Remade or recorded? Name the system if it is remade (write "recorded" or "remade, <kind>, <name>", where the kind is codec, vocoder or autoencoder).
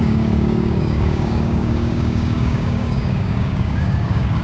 remade, codec, DAC